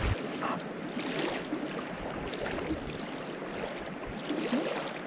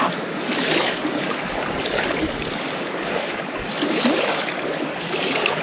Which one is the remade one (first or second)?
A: second